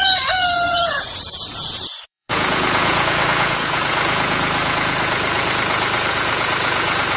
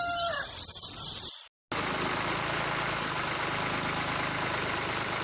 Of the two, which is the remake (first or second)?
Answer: first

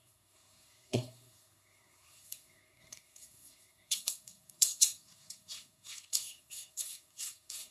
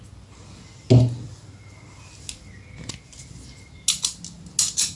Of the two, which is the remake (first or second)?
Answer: first